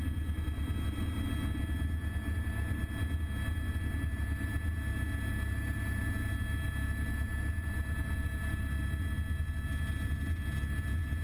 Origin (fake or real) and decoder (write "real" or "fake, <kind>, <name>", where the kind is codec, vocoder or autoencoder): real